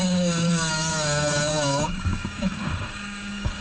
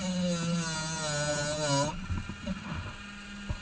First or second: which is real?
second